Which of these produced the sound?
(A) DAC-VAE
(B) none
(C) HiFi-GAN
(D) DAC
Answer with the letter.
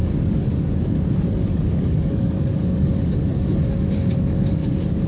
D